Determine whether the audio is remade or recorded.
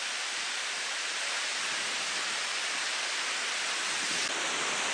recorded